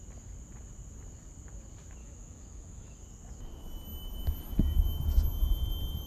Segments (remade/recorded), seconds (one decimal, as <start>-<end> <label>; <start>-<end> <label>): 0.0-2.0 recorded; 2.0-3.0 remade; 3.0-6.1 recorded